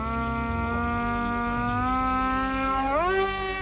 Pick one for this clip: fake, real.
real